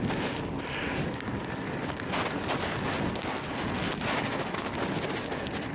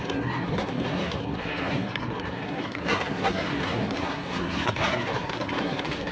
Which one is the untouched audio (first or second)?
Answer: first